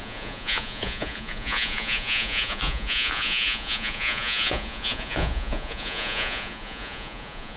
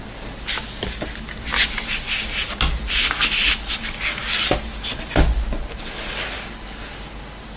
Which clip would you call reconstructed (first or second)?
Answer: first